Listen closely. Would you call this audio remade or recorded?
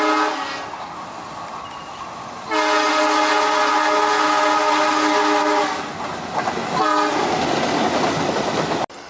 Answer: recorded